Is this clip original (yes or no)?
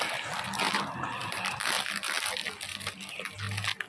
yes